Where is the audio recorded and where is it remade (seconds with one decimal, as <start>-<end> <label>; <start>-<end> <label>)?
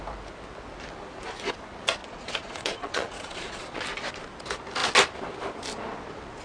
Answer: 0.0-2.0 recorded; 2.0-3.8 remade; 3.8-6.4 recorded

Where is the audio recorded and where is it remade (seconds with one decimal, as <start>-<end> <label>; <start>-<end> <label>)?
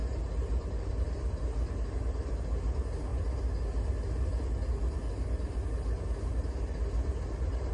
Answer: 0.0-7.7 recorded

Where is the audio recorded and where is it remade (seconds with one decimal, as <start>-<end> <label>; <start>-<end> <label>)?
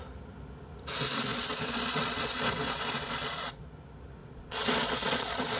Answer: 0.0-1.3 recorded; 1.3-3.6 remade; 3.6-4.2 recorded; 4.2-5.6 remade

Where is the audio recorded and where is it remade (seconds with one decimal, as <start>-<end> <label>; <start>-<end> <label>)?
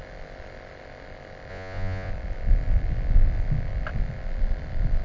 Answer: 0.0-1.5 recorded; 1.5-2.1 remade; 2.1-5.0 recorded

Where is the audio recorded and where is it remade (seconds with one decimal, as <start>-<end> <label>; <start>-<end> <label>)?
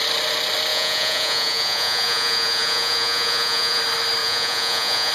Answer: 0.0-0.7 recorded; 0.7-3.8 remade; 3.8-4.2 recorded; 4.2-5.1 remade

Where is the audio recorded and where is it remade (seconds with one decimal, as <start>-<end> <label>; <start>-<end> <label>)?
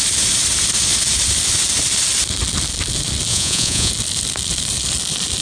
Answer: 0.0-3.3 recorded; 3.3-3.9 remade; 3.9-5.4 recorded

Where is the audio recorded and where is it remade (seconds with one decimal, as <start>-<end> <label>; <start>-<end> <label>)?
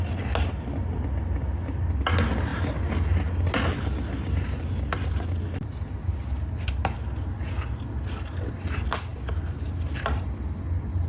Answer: 0.0-11.1 recorded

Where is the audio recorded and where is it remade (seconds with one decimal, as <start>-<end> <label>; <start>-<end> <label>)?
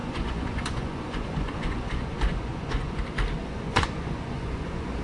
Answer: 0.0-3.0 remade; 3.0-3.4 recorded; 3.4-5.0 remade